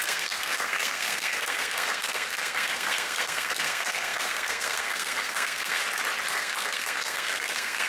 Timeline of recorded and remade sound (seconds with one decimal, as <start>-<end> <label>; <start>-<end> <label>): 0.0-5.8 remade; 5.8-6.3 recorded; 6.3-7.9 remade